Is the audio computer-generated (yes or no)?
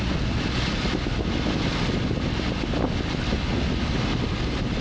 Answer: no